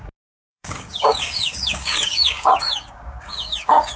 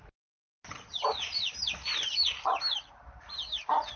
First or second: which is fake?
first